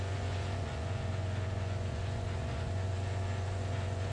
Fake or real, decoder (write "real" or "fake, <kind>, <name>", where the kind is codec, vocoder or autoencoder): fake, vocoder, Vocos